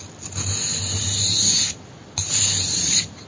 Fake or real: real